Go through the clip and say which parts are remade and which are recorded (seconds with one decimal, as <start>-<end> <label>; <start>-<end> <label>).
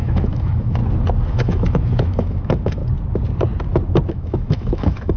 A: 0.0-0.8 remade; 0.8-1.3 recorded; 1.3-2.8 remade; 2.8-4.1 recorded; 4.1-5.2 remade